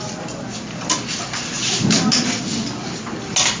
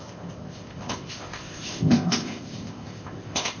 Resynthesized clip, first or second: second